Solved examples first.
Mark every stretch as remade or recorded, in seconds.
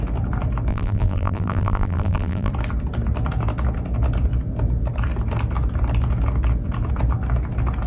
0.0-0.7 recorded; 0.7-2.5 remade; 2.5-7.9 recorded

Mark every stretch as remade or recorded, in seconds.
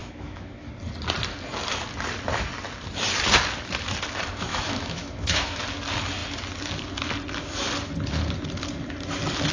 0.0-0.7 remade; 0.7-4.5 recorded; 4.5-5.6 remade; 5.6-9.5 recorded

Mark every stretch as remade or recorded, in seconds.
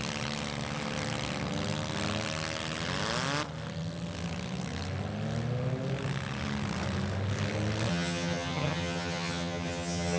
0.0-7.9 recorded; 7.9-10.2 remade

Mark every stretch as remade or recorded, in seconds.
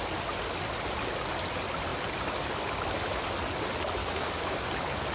0.0-4.0 recorded; 4.0-4.6 remade; 4.6-5.1 recorded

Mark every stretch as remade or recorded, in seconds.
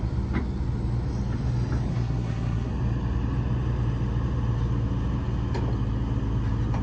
0.0-1.9 recorded; 1.9-2.7 remade; 2.7-6.8 recorded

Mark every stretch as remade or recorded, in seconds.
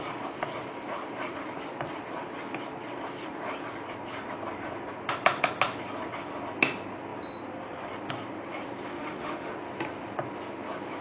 0.0-8.9 recorded; 8.9-9.5 remade; 9.5-11.0 recorded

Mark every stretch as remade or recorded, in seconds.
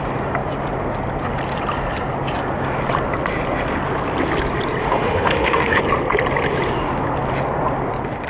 0.0-4.8 recorded; 4.8-5.8 remade; 5.8-8.3 recorded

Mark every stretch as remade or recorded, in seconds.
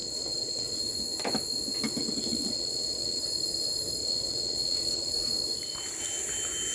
0.0-0.8 remade; 0.8-2.0 recorded; 2.0-3.2 remade; 3.2-4.0 recorded; 4.0-5.1 remade; 5.1-6.7 recorded